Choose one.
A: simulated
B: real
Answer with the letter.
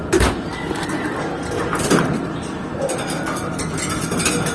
B